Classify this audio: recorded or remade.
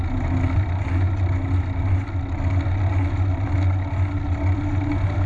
recorded